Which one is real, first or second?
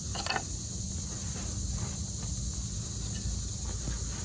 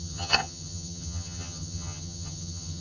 first